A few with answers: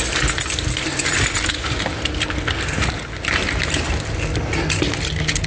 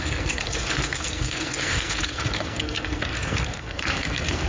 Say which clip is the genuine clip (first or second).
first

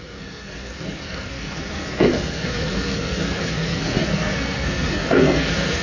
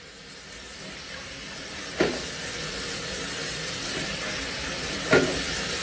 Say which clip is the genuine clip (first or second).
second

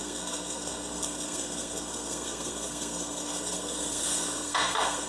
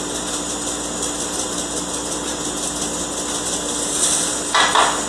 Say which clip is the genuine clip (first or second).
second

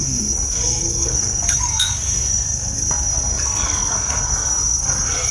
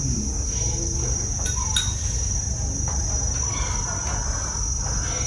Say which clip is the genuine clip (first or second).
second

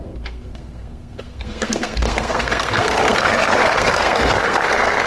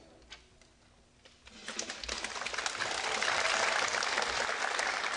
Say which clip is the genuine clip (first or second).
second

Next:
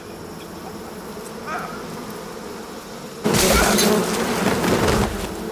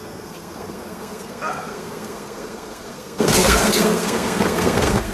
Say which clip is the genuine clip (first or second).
first